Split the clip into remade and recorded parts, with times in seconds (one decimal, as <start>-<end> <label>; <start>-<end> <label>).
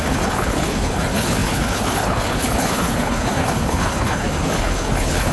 0.0-5.3 remade